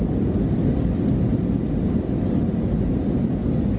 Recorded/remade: recorded